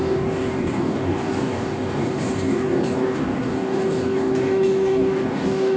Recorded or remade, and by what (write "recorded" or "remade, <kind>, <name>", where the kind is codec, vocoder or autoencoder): remade, codec, DAC